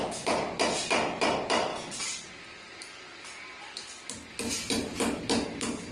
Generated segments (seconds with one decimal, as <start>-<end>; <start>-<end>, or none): none